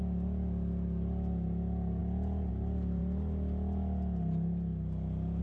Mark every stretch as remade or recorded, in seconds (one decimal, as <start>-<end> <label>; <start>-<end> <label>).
0.0-5.4 recorded